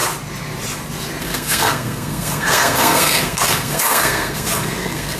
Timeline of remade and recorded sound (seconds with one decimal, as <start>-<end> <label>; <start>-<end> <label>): 0.0-1.2 recorded; 1.2-5.2 remade